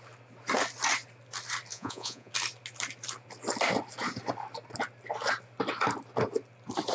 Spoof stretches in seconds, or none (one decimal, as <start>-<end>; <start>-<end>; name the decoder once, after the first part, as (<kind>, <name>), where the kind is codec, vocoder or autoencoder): 1.7-2.3 (vocoder, Vocos)